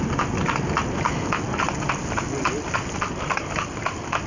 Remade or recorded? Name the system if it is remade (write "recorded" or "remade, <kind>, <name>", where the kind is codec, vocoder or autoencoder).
recorded